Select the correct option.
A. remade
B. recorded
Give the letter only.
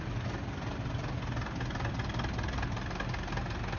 B